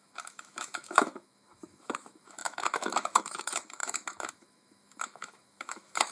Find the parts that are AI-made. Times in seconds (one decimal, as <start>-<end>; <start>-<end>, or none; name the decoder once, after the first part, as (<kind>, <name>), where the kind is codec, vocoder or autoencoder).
0.0-6.1 (autoencoder, DAC-VAE)